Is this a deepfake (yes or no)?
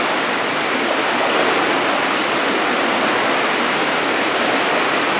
no